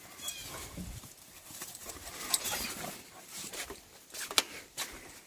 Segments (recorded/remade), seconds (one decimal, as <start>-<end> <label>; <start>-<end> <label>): 0.0-0.4 recorded; 0.4-3.5 remade; 3.5-5.3 recorded